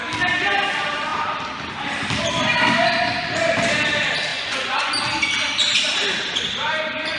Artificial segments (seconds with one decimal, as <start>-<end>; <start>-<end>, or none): 4.3-4.9